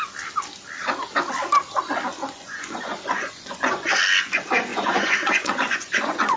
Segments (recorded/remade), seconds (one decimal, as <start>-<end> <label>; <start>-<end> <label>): 0.0-2.2 recorded; 2.2-4.0 remade; 4.0-4.7 recorded; 4.7-6.4 remade